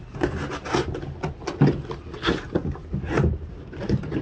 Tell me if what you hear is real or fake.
real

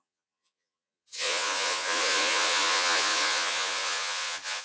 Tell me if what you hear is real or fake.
fake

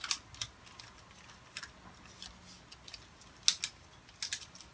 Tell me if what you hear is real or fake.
real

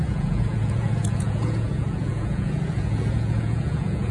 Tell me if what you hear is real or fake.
fake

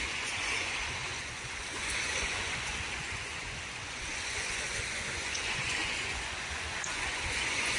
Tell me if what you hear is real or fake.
fake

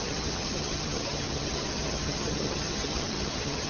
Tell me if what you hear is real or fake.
fake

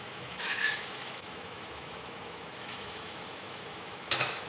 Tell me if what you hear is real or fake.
fake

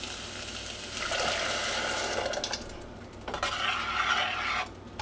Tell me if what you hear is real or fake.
real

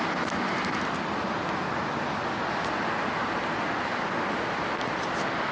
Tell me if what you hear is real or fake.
real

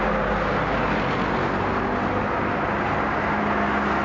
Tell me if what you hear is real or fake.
real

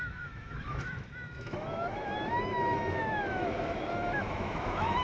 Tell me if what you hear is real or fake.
fake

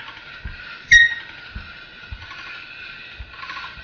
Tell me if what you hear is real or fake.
real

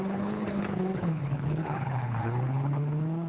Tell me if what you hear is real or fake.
fake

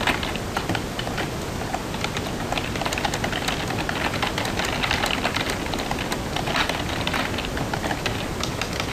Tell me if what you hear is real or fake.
real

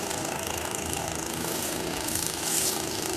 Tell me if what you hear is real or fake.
fake